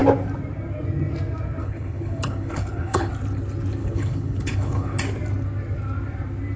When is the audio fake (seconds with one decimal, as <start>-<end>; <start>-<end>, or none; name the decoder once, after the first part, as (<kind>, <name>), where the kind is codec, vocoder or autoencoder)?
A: 1.6-3.1 (codec, HILCodec); 3.8-5.0